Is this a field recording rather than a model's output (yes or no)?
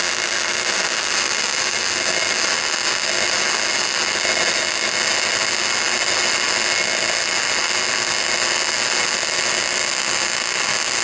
yes